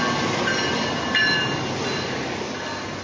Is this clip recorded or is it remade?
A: recorded